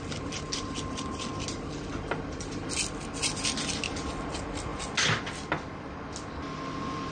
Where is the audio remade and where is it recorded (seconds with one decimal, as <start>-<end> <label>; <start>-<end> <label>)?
0.0-7.1 recorded